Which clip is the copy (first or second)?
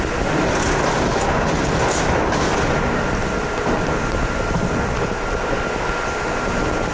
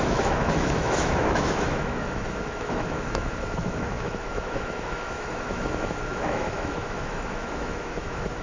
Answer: second